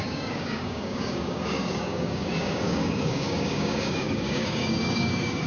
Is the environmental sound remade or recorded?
remade